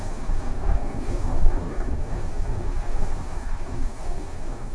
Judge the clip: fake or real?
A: fake